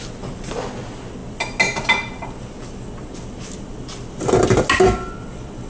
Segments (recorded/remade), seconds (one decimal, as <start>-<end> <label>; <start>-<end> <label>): 0.0-5.7 recorded